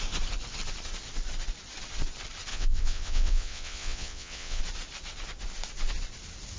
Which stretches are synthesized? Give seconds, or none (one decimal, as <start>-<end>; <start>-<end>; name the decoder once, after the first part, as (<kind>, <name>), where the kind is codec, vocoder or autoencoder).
2.5-4.6 (vocoder, WaveNeXt)